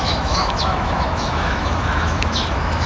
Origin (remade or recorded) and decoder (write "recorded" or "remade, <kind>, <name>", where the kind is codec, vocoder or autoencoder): remade, autoencoder, DAC-VAE